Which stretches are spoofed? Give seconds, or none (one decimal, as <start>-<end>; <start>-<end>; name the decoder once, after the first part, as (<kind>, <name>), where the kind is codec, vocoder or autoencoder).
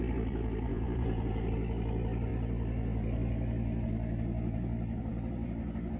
0.7-1.5 (vocoder, Vocos)